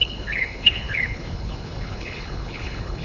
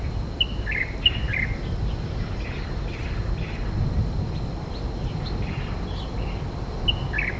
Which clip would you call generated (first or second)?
first